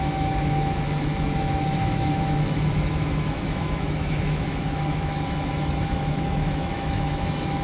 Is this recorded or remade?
remade